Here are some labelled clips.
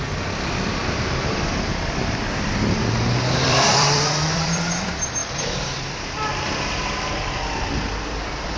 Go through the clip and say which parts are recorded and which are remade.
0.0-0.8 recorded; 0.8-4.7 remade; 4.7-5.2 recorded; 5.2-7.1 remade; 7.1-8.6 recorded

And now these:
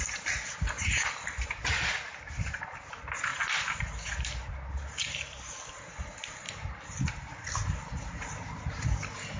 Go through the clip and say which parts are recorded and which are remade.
0.0-9.4 recorded

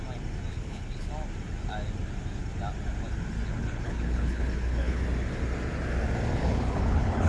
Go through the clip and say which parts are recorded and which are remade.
0.0-0.5 recorded; 0.5-1.1 remade; 1.1-3.5 recorded; 3.5-5.0 remade; 5.0-6.4 recorded; 6.4-7.3 remade

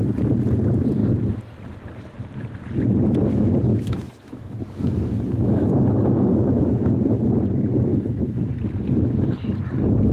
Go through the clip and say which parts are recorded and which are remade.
0.0-3.7 recorded; 3.7-7.2 remade; 7.2-7.9 recorded; 7.9-8.5 remade; 8.5-10.1 recorded

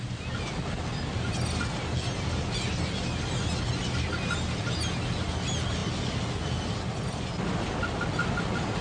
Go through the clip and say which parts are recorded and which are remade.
0.0-8.8 recorded